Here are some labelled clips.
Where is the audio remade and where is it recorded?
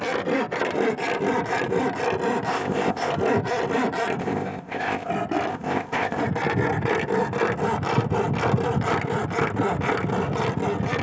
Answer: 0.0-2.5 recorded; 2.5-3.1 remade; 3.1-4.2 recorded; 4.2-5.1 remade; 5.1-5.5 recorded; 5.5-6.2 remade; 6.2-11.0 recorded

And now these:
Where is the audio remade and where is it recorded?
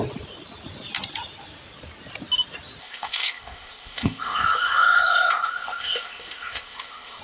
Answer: 0.0-2.8 recorded; 2.8-7.2 remade